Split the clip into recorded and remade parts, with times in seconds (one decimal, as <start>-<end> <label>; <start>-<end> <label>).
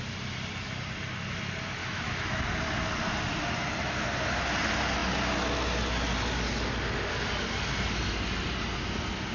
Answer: 0.0-1.8 recorded; 1.8-2.4 remade; 2.4-9.3 recorded